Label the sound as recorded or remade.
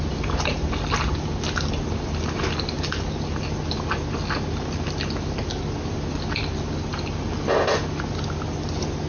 recorded